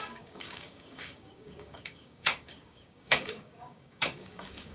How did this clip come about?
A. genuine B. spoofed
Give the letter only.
B